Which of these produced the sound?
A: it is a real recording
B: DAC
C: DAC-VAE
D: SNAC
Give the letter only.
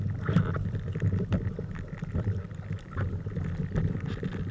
A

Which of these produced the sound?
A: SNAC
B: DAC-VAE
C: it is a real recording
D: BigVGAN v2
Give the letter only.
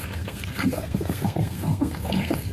A